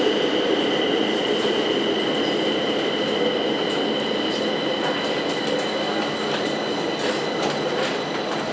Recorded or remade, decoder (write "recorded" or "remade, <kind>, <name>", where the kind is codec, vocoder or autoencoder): recorded